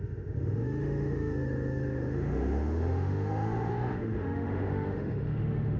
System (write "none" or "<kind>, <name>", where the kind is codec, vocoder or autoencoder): autoencoder, DAC-VAE